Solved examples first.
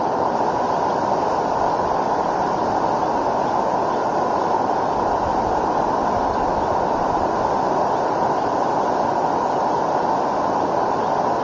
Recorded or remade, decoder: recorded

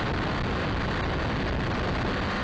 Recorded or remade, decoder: recorded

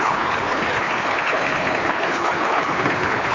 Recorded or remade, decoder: remade, codec, HILCodec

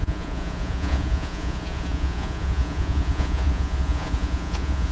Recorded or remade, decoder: remade, vocoder, Vocos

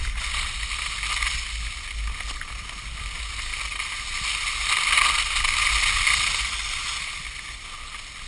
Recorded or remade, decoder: recorded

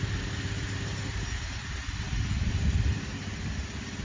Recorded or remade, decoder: recorded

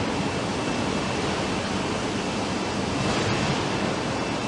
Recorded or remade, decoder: recorded